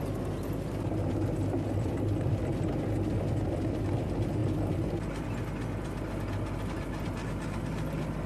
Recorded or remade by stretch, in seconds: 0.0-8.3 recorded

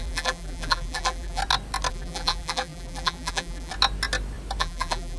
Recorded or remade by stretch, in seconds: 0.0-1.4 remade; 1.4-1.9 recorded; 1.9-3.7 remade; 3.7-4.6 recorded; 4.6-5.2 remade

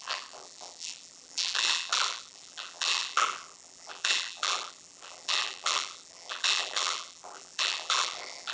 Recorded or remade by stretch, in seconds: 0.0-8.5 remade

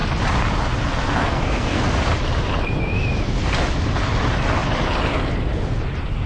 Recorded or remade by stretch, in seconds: 0.0-1.2 recorded; 1.2-1.8 remade; 1.8-6.3 recorded

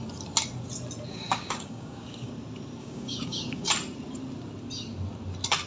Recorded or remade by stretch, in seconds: 0.0-1.1 recorded; 1.1-2.3 remade; 2.3-2.8 recorded; 2.8-3.7 remade; 3.7-5.7 recorded

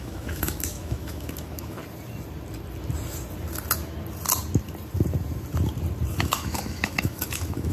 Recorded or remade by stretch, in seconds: 0.0-1.8 remade; 1.8-6.1 recorded; 6.1-7.7 remade